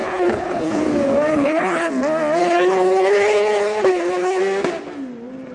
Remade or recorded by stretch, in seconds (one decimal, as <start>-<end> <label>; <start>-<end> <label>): 0.0-0.8 remade; 0.8-1.3 recorded; 1.3-1.9 remade; 1.9-2.4 recorded; 2.4-4.4 remade; 4.4-5.5 recorded